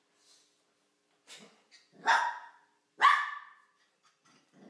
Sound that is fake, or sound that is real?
real